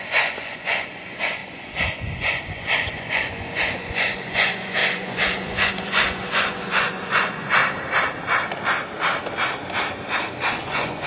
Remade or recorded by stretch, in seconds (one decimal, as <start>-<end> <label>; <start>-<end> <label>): 0.0-7.6 remade; 7.6-10.5 recorded; 10.5-11.1 remade